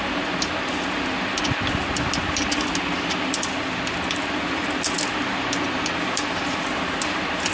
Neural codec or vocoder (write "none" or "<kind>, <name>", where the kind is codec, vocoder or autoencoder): none